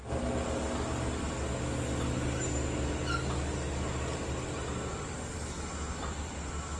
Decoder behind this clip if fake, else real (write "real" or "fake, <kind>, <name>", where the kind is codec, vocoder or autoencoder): real